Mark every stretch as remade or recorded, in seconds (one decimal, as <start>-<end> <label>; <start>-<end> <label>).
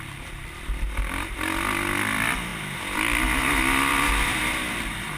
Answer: 0.0-5.2 recorded